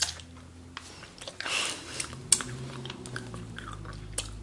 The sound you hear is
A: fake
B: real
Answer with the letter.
B